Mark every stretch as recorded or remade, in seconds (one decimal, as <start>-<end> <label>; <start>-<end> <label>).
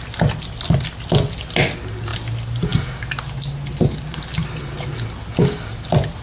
0.0-6.2 recorded